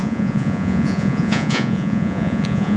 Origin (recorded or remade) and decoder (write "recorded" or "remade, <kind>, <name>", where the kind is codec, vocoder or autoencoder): remade, vocoder, Vocos